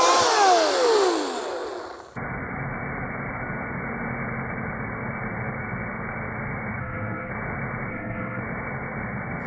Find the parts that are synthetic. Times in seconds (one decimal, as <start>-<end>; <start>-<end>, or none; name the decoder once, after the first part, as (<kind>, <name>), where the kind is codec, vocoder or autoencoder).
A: 6.8-7.3 (codec, SNAC); 7.9-8.4